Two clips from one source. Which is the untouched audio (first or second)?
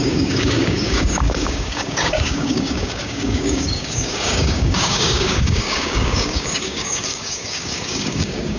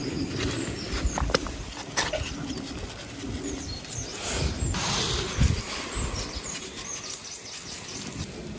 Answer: second